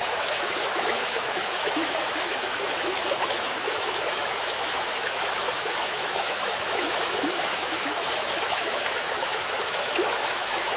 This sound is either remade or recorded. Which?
remade